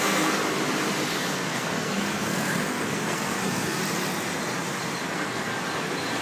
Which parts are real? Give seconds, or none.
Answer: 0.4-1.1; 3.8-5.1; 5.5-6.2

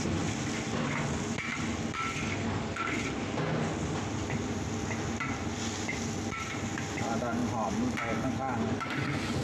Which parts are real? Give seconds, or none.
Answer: 0.0-2.3; 3.0-9.4

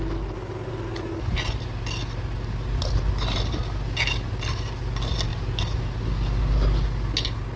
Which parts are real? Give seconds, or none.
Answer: 0.0-7.6

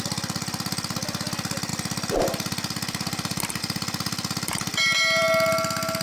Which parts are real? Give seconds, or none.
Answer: 0.0-6.0

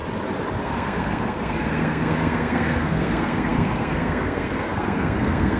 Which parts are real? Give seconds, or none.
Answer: 0.0-0.6

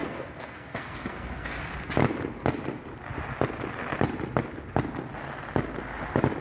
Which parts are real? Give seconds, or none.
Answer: 1.6-6.4